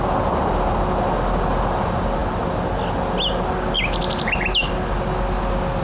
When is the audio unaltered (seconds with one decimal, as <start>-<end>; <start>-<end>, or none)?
0.0-5.8